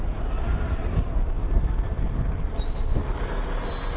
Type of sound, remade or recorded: recorded